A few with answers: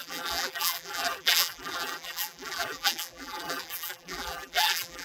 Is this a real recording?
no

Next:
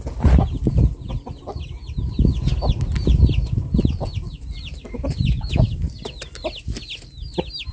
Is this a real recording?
yes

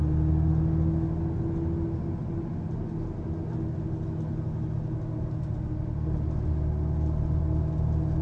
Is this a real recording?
yes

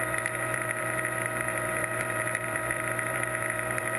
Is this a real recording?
no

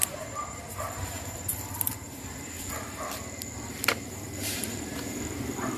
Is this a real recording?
no